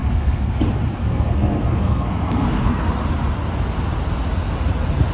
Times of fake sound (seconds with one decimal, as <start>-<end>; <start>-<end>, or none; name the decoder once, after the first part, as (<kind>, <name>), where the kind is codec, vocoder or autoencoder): 0.0-0.6 (codec, SNAC); 1.0-2.9